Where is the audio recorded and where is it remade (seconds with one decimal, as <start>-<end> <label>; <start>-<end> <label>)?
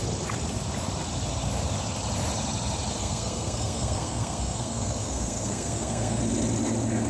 0.0-3.0 recorded; 3.0-6.2 remade; 6.2-7.1 recorded